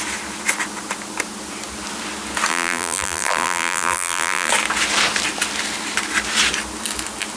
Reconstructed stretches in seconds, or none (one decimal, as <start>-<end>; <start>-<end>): 2.5-4.5